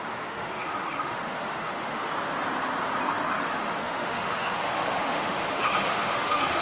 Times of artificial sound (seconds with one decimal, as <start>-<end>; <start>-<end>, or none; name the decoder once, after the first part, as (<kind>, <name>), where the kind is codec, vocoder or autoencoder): 0.0-2.1 (autoencoder, DAC-VAE); 3.4-6.6